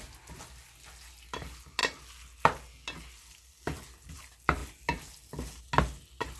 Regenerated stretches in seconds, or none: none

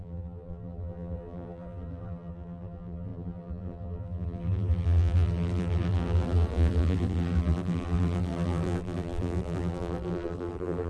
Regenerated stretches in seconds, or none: 0.0-10.9 (vocoder, BigVGAN v2)

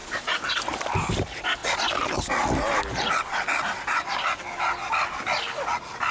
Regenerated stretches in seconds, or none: 0.0-0.5 (vocoder, BigVGAN v2)

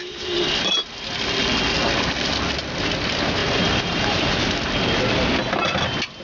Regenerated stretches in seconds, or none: 0.0-0.9 (vocoder, BigVGAN v2); 3.4-4.2

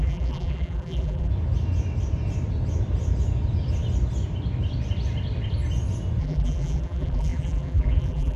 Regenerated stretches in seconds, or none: 0.0-1.3 (vocoder, BigVGAN v2); 6.2-8.4

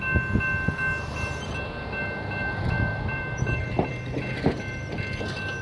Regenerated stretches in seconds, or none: 2.4-3.9 (vocoder, BigVGAN v2)

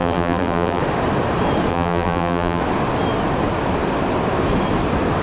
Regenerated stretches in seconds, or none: 0.0-0.8 (vocoder, BigVGAN v2); 1.7-2.6